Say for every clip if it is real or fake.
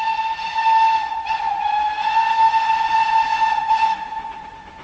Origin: real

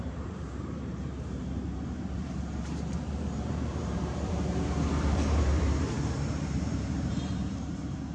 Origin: fake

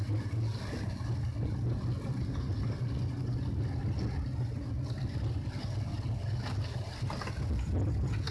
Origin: real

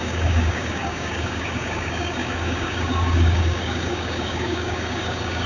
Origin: fake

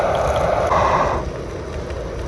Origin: real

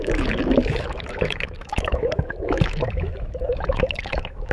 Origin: fake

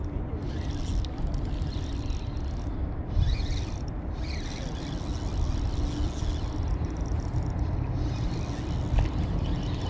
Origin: real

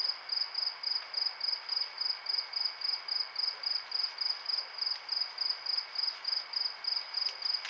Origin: real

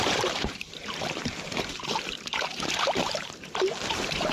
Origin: fake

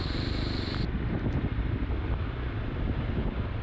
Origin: real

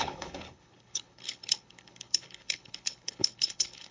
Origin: fake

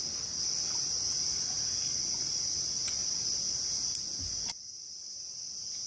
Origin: real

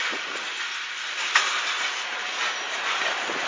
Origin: real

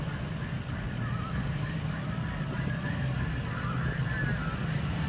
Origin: real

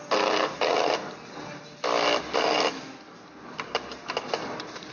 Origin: real